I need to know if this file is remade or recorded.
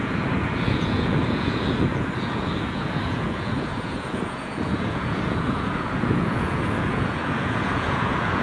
remade